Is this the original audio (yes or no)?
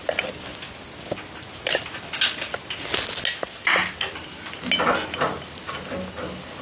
yes